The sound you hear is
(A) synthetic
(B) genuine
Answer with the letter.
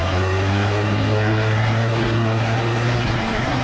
A